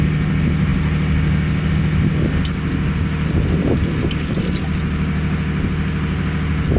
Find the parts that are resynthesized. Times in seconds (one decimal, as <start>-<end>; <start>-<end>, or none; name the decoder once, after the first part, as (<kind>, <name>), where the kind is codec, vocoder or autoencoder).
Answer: 2.7-3.6 (vocoder, BigVGAN v2)